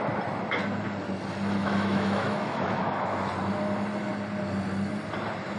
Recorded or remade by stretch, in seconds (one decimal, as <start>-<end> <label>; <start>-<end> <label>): 0.0-1.6 recorded; 1.6-3.3 remade; 3.3-5.6 recorded